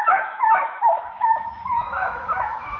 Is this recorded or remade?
remade